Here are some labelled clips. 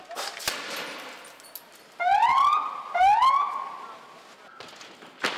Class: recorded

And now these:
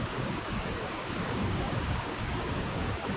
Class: remade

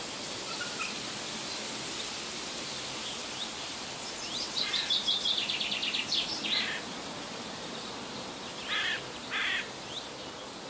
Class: remade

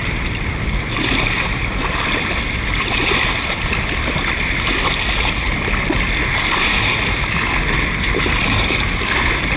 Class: recorded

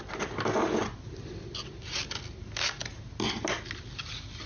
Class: recorded